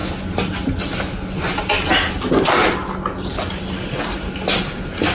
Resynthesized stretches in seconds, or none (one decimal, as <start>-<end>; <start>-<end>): none